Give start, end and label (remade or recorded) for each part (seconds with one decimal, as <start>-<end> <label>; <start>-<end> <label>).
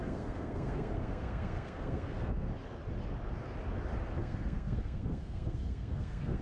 0.0-2.5 remade; 2.5-4.1 recorded; 4.1-6.4 remade